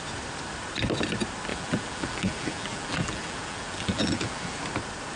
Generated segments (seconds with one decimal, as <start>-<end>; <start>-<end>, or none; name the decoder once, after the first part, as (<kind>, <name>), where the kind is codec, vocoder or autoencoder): 1.5-4.6 (vocoder, BigVGAN v2)